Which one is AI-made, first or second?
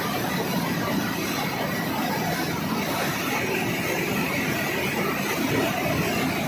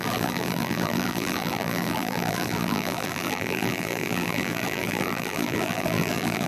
second